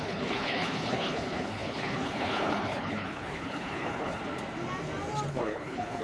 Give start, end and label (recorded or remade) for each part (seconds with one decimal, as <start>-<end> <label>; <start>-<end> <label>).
0.0-4.2 remade; 4.2-5.3 recorded; 5.3-6.0 remade